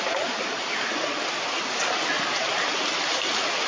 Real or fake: real